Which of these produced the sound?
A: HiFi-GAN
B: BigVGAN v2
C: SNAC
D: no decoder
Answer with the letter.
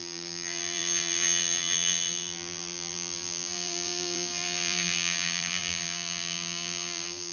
B